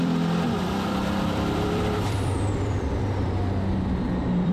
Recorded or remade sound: remade